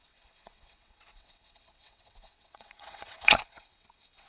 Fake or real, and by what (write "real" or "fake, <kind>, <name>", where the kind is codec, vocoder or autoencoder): fake, vocoder, WaveNeXt